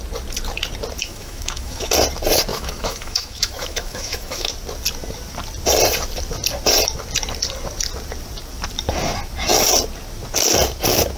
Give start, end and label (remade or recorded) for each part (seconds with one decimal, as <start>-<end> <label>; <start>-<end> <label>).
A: 0.0-1.0 recorded; 1.0-1.9 remade; 1.9-2.5 recorded; 2.5-4.5 remade; 4.5-11.2 recorded